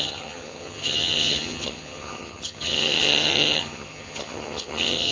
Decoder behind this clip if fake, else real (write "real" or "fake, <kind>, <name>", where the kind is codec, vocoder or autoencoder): fake, vocoder, HiFi-GAN